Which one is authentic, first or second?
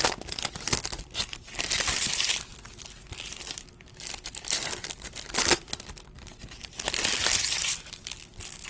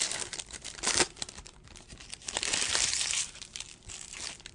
first